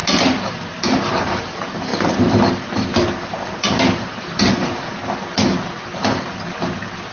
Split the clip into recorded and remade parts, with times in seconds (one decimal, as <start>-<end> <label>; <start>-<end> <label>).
0.0-0.5 recorded; 0.5-1.9 remade; 1.9-3.2 recorded; 3.2-5.0 remade; 5.0-7.1 recorded